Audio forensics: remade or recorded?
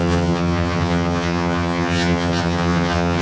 remade